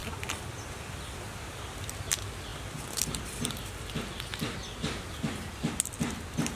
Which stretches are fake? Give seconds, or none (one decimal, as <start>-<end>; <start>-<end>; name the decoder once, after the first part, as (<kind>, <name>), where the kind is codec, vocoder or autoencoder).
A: none